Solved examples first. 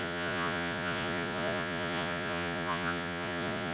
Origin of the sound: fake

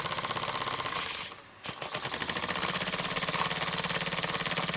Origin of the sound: real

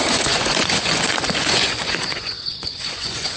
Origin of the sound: fake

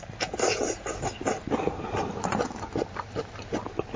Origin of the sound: real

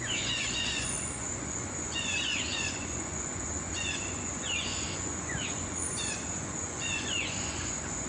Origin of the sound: fake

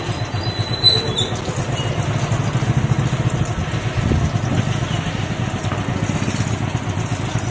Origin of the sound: real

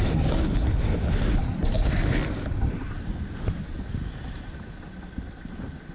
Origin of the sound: real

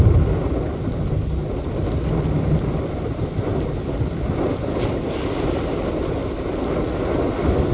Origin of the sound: real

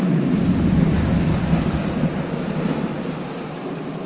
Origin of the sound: real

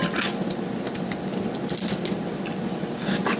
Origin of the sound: real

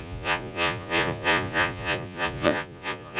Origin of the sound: fake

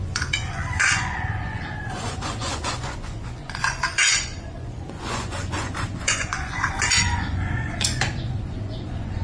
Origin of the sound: fake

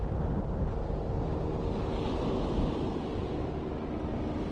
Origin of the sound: real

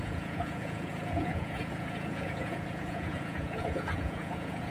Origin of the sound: fake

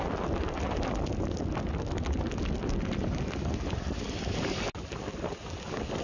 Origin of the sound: real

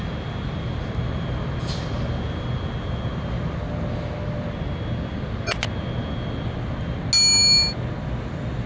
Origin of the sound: real